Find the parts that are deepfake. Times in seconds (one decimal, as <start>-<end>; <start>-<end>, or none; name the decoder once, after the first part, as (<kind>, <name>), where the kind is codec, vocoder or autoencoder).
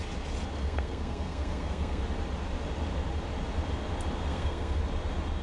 0.6-2.0 (codec, SNAC); 4.3-4.8